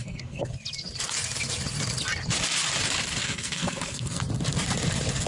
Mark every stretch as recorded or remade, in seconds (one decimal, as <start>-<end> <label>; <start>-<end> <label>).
0.0-0.5 remade; 0.5-3.2 recorded; 3.2-4.2 remade; 4.2-5.3 recorded